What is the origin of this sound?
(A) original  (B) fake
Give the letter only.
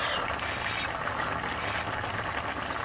A